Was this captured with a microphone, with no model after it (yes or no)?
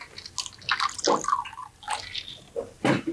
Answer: yes